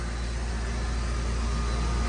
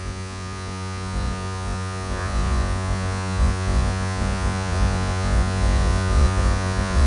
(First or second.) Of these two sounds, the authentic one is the first